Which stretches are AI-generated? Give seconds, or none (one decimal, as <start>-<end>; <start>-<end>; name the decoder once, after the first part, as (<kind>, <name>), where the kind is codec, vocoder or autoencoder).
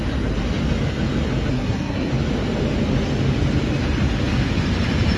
1.5-2.1 (codec, SNAC)